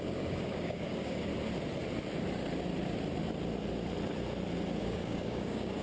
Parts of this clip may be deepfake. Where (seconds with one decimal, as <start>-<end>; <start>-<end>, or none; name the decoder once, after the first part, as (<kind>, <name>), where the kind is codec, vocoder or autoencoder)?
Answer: 0.0-1.3 (codec, DAC); 4.8-5.8